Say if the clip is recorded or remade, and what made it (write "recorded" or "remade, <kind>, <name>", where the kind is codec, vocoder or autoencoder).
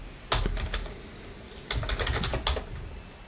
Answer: recorded